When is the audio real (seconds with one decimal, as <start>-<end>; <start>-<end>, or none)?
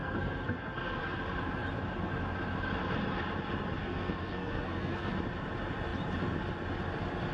1.0-3.8; 5.1-7.3